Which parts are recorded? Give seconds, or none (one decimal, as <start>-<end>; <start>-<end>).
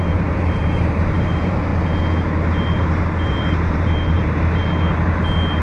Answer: 1.7-2.8; 4.6-5.6